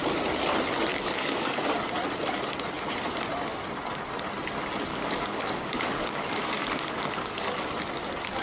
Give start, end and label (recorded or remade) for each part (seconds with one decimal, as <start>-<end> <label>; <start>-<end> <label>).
0.0-0.9 recorded; 0.9-1.7 remade; 1.7-4.9 recorded; 4.9-7.7 remade; 7.7-8.4 recorded